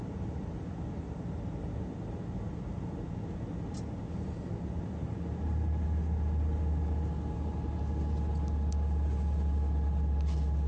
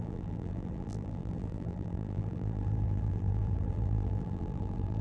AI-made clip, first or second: second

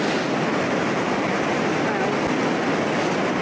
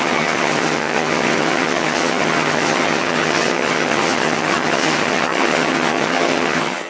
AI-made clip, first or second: second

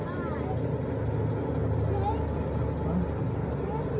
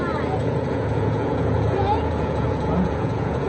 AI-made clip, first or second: second